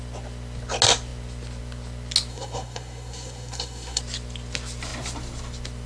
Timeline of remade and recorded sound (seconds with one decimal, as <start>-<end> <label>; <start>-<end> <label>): 0.0-2.3 recorded; 2.3-4.0 remade; 4.0-5.9 recorded